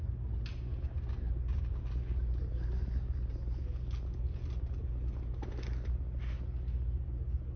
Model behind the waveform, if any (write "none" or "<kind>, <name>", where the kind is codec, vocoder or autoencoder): none